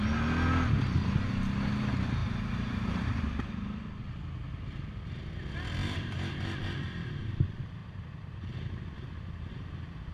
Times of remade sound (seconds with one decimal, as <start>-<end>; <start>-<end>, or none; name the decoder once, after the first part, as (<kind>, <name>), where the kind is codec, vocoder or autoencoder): 2.2-3.8 (vocoder, BigVGAN v2); 5.8-7.3; 7.8-8.7